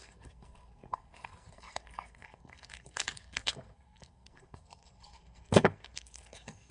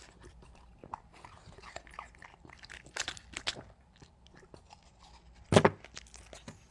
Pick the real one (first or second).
second